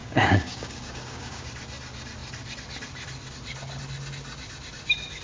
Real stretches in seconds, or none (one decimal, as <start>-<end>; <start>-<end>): 1.5-5.2